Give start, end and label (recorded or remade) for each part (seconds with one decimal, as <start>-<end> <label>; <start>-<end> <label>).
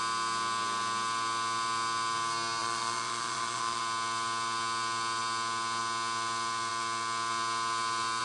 0.0-2.6 recorded; 2.6-3.8 remade; 3.8-8.2 recorded